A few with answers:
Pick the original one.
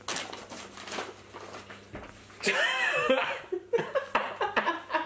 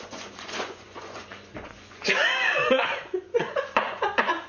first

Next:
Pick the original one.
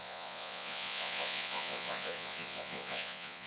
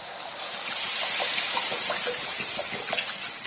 second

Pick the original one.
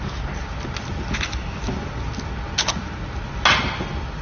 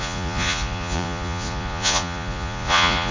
first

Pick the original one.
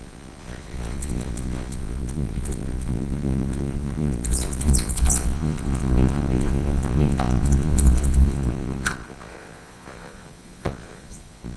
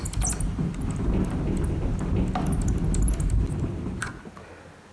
second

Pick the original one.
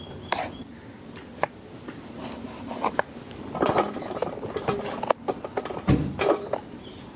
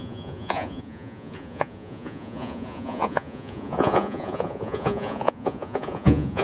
first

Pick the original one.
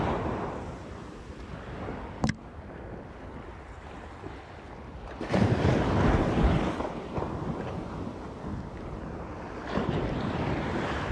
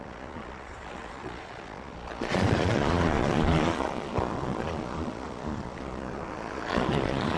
first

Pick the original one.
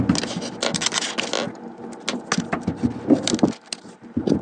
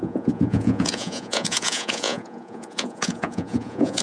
first